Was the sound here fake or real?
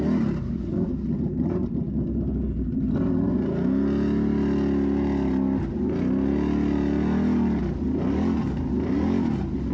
real